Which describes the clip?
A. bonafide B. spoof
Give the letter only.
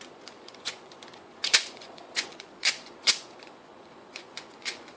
B